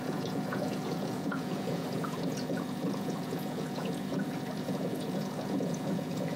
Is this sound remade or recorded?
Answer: remade